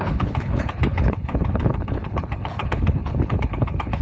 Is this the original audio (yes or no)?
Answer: no